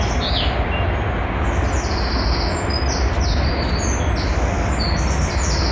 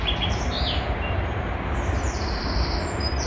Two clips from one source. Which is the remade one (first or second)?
second